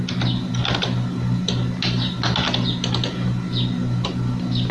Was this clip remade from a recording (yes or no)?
no